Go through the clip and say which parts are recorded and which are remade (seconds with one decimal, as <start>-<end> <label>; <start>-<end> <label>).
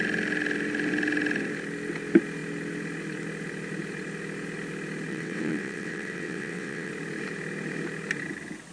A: 0.0-5.1 recorded; 5.1-6.9 remade; 6.9-8.7 recorded